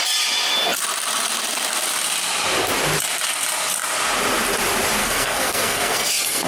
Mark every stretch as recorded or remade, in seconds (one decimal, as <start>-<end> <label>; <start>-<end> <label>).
0.0-5.0 recorded; 5.0-6.5 remade